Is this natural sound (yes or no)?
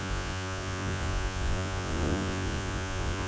no